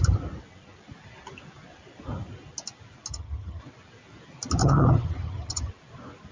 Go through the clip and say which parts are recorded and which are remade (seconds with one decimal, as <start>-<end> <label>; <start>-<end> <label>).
0.0-3.1 recorded; 3.1-3.6 remade; 3.6-4.6 recorded; 4.6-5.7 remade; 5.7-6.3 recorded